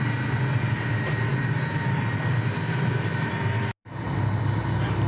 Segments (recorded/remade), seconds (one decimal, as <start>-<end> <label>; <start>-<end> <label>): 0.0-5.1 recorded